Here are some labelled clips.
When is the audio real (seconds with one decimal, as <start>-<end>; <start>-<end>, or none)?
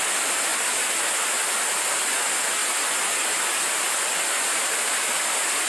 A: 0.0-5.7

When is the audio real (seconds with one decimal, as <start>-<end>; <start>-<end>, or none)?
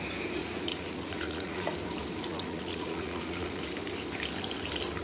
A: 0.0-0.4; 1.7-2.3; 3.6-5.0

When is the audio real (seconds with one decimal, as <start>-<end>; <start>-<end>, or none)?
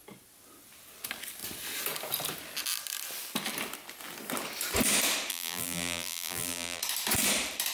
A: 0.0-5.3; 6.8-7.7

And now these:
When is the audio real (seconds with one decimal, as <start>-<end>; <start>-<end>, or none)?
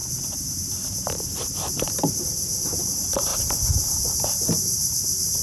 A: 3.3-4.2